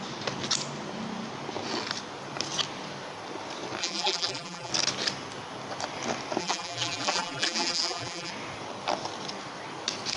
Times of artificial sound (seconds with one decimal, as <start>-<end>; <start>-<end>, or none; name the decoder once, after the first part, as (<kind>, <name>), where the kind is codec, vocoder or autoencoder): 3.8-4.7 (vocoder, BigVGAN v2); 6.4-8.3